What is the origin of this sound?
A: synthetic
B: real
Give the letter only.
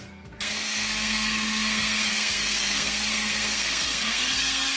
A